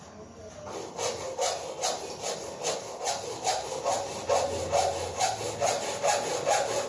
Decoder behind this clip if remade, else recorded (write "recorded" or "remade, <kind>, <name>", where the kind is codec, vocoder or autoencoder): recorded